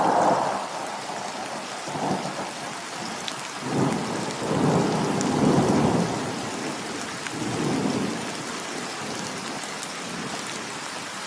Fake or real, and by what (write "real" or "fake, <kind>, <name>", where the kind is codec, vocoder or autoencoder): real